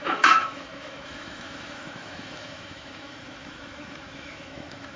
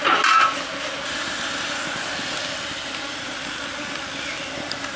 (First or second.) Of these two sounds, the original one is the second